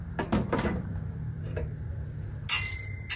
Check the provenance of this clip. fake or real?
real